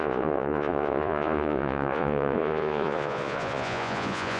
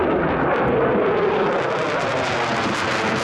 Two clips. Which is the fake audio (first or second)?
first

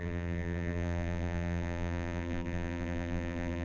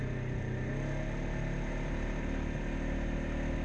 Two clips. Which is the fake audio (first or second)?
first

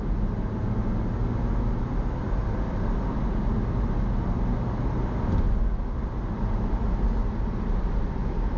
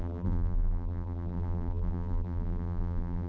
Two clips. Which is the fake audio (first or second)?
second